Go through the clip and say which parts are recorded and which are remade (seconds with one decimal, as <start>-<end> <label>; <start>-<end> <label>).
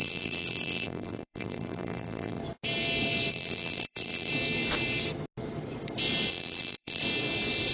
0.0-2.4 remade; 2.4-3.3 recorded; 3.3-4.3 remade; 4.3-6.3 recorded; 6.3-7.0 remade; 7.0-7.7 recorded